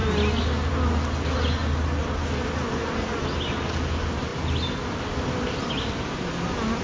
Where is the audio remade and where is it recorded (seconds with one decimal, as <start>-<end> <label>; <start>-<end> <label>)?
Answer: 0.0-4.3 recorded; 4.3-5.7 remade; 5.7-6.8 recorded

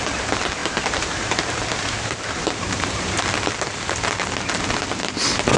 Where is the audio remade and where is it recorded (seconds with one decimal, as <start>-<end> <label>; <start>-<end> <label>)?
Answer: 0.0-0.6 recorded; 0.6-3.2 remade; 3.2-5.6 recorded